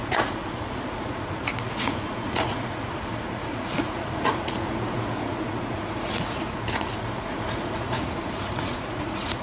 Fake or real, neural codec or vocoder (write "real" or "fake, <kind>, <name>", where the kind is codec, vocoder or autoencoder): fake, vocoder, Vocos